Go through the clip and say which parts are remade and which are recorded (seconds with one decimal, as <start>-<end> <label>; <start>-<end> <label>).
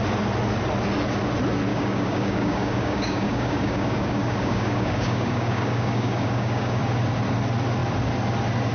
0.0-1.7 recorded; 1.7-6.8 remade; 6.8-8.7 recorded